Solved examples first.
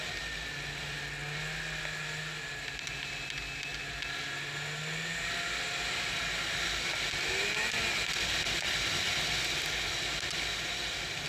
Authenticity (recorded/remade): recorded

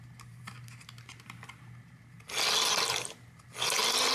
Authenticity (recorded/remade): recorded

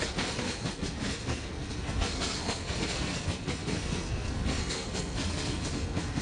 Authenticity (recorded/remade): remade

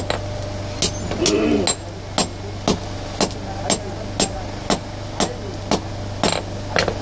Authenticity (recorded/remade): recorded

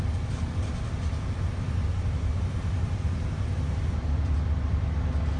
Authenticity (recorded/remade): recorded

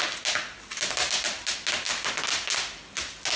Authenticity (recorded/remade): recorded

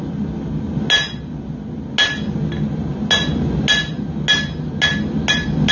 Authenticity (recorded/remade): recorded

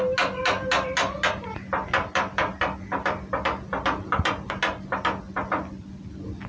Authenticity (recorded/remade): recorded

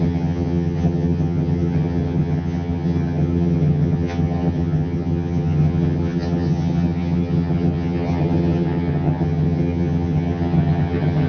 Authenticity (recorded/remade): remade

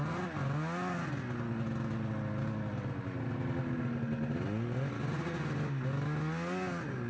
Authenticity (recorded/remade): recorded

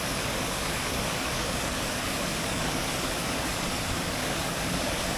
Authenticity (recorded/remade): remade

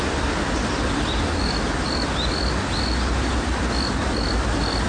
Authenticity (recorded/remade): recorded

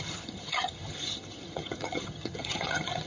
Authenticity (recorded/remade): remade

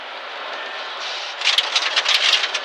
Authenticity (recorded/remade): recorded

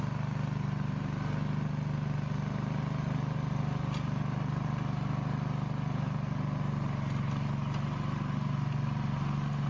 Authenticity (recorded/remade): recorded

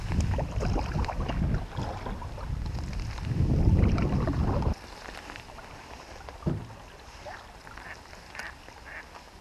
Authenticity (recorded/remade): recorded